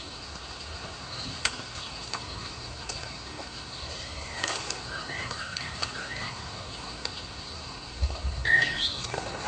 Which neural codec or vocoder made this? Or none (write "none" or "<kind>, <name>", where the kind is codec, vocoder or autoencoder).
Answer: codec, SNAC